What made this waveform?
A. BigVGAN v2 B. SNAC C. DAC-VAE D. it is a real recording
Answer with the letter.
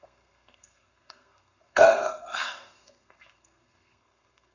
B